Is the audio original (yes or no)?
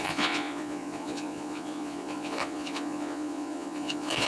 no